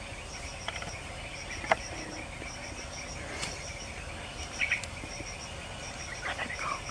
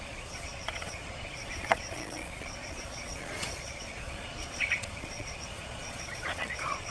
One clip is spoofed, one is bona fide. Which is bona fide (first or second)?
first